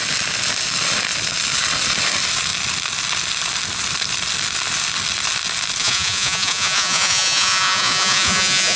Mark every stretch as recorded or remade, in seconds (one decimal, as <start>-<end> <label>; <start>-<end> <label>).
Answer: 0.0-5.8 recorded; 5.8-8.8 remade